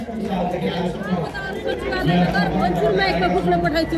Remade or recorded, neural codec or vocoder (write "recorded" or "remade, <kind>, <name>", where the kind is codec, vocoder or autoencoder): recorded